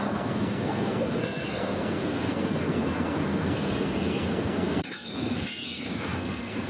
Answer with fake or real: fake